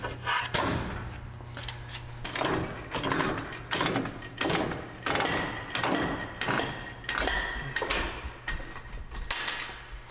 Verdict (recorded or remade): recorded